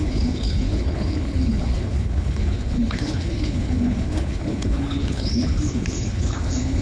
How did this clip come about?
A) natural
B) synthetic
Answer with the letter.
B